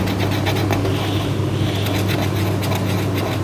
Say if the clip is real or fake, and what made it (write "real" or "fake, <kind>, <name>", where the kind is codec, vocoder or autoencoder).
real